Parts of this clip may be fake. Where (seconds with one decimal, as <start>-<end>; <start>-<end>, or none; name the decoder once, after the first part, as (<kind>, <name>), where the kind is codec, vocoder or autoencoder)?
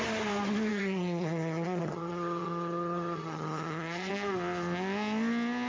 0.7-4.1 (vocoder, HiFi-GAN)